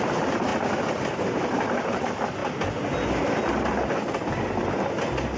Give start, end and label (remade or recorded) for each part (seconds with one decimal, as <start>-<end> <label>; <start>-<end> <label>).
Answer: 0.0-0.5 recorded; 0.5-2.0 remade; 2.0-5.4 recorded